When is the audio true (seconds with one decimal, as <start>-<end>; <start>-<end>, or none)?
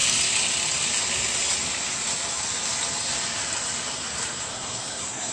0.0-4.5